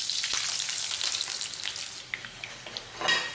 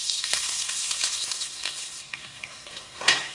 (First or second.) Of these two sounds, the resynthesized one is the second